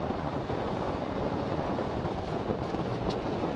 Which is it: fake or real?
fake